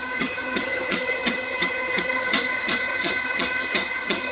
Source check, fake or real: fake